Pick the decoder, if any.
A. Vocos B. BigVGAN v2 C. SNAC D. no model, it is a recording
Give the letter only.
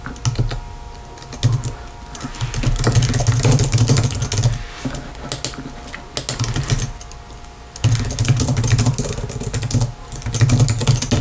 D